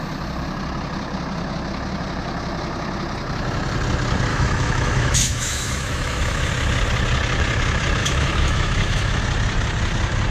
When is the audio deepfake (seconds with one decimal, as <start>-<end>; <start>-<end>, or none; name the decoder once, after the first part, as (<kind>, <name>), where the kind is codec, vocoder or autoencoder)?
4.3-6.5 (autoencoder, DAC-VAE); 8.0-9.2

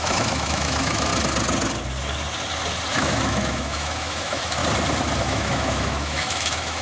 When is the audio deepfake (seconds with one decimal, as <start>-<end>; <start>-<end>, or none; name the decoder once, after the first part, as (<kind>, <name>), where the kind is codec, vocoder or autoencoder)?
0.0-1.1 (autoencoder, DAC-VAE); 2.9-4.6; 5.2-6.8